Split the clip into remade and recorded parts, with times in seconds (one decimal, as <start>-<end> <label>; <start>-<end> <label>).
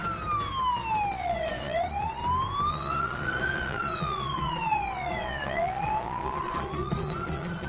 0.0-1.1 recorded; 1.1-2.2 remade; 2.2-2.7 recorded; 2.7-7.7 remade